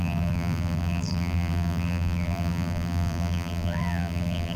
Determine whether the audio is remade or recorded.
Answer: remade